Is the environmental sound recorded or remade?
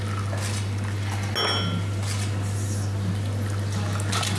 recorded